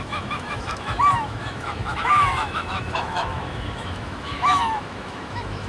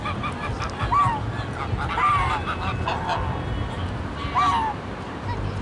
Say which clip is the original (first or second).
second